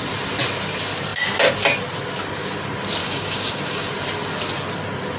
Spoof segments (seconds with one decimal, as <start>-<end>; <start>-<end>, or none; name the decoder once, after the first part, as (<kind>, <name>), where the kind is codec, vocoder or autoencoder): 3.0-3.9 (codec, DAC)